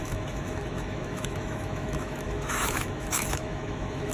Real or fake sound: fake